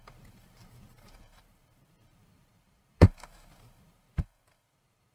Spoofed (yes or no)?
yes